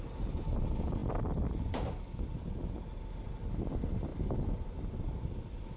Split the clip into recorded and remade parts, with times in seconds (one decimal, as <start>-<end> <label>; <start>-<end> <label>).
0.0-5.8 recorded